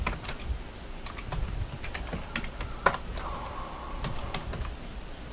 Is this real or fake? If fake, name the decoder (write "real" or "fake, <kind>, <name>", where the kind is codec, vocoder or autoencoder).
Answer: real